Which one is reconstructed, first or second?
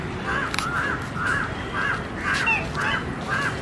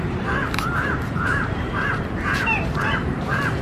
second